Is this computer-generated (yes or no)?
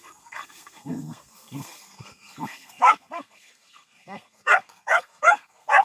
yes